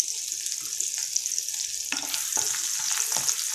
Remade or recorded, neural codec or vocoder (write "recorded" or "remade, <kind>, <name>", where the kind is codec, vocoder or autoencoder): recorded